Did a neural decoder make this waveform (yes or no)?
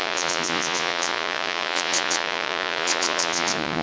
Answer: yes